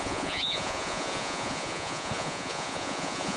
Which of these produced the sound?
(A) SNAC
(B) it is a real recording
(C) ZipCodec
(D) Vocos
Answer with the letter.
D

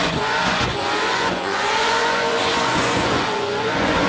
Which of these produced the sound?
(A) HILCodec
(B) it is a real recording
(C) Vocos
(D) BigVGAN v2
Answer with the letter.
C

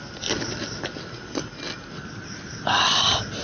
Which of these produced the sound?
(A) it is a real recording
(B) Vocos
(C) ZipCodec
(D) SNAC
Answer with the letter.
A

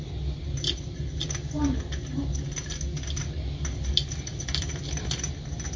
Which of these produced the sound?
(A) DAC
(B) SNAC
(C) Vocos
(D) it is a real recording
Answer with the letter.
D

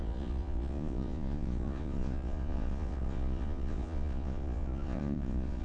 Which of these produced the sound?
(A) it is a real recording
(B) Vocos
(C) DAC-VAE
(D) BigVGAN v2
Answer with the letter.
B